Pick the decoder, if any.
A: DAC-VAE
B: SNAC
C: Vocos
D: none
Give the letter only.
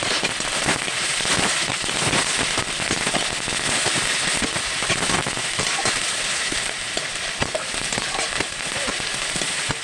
D